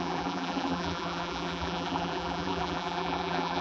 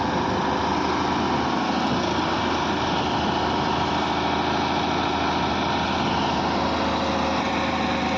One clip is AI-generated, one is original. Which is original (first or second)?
second